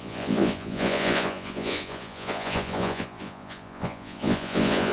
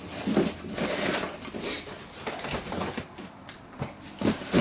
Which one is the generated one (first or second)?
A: first